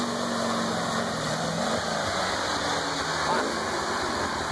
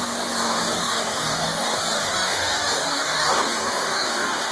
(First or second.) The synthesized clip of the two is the second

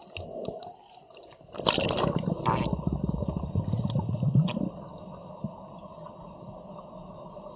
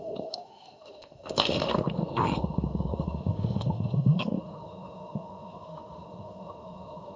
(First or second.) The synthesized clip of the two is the second